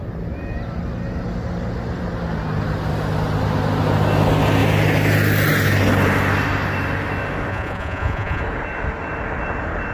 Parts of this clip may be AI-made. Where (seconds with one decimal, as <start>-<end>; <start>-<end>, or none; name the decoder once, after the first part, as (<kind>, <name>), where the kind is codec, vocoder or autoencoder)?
7.5-8.4 (vocoder, Vocos)